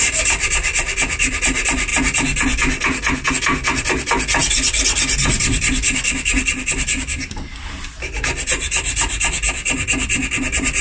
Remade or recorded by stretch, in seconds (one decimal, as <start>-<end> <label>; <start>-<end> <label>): 0.0-10.8 recorded